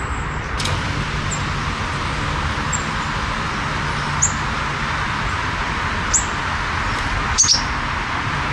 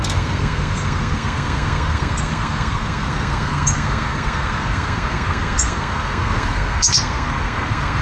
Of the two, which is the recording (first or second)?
first